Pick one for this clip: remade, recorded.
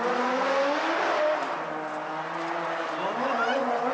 recorded